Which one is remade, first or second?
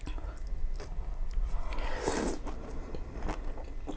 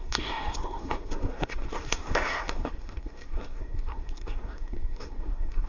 second